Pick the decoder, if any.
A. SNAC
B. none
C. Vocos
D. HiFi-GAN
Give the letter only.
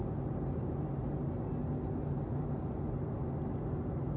B